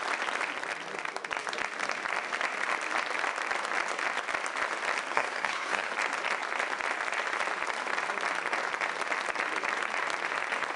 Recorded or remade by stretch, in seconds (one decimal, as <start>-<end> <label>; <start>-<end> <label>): 0.0-5.1 recorded; 5.1-5.9 remade; 5.9-10.8 recorded